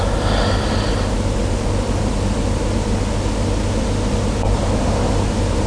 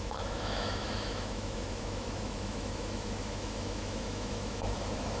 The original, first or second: first